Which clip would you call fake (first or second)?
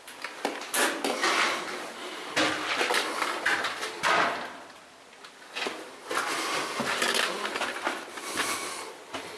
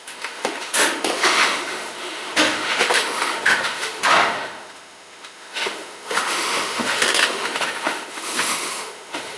second